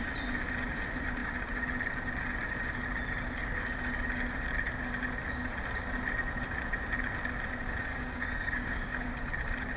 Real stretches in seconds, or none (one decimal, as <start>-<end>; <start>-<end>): 0.0-7.9; 9.1-9.8

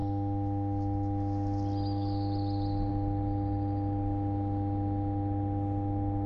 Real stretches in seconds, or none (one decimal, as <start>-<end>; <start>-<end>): 0.0-6.3